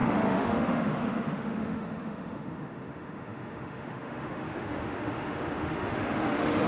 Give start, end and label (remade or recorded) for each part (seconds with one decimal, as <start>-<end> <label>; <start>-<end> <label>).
0.0-6.7 remade